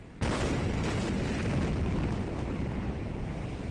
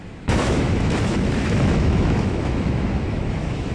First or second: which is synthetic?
second